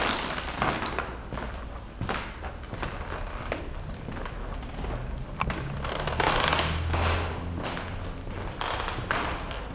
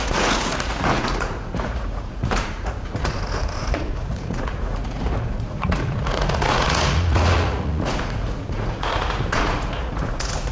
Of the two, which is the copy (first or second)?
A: second